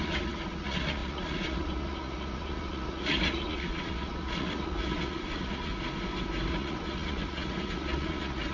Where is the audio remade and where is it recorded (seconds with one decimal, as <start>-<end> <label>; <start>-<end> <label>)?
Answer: 0.0-5.7 remade; 5.7-6.5 recorded; 6.5-8.5 remade

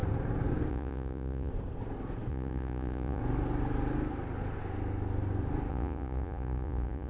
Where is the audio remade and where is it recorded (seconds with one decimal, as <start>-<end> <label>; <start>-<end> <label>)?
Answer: 0.0-0.7 recorded; 0.7-1.5 remade; 1.5-2.3 recorded; 2.3-3.2 remade; 3.2-5.7 recorded; 5.7-7.1 remade